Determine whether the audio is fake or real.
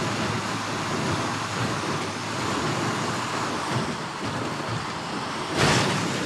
real